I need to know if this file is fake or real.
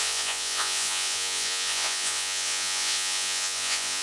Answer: fake